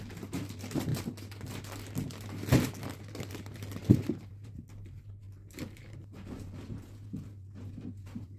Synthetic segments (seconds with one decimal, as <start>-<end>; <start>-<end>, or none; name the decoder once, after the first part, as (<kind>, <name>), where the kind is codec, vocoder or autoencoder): 0.0-0.9 (vocoder, BigVGAN v2); 3.3-3.8; 4.3-8.4